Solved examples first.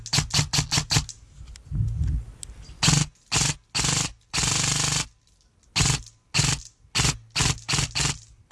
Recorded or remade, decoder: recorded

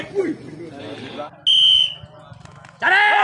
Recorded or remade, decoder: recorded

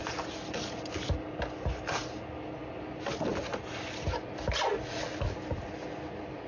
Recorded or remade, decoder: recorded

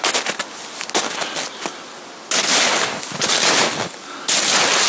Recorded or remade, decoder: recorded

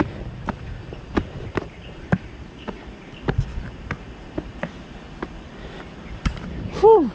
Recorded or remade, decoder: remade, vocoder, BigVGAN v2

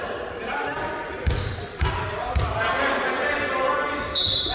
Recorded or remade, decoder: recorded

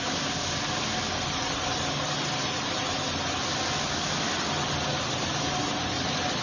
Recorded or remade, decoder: recorded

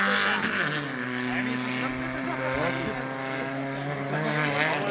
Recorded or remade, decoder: recorded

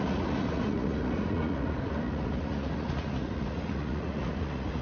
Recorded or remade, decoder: remade, vocoder, Vocos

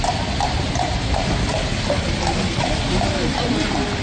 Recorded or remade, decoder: recorded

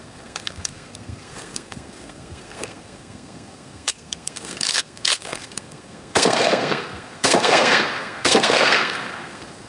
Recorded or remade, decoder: remade, codec, SNAC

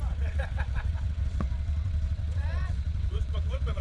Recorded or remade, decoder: remade, vocoder, WaveNeXt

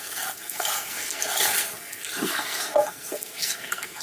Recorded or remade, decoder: remade, codec, SNAC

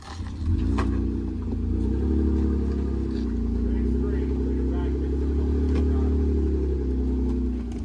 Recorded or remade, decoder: recorded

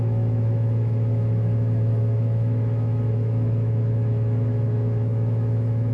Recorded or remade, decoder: remade, autoencoder, DAC-VAE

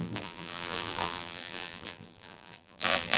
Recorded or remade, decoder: remade, vocoder, BigVGAN v2